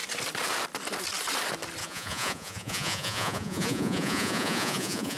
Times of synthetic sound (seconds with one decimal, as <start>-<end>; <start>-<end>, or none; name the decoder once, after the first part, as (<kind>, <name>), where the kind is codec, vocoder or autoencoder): 1.8-5.2 (vocoder, Vocos)